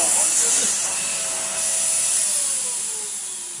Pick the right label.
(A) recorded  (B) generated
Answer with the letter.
A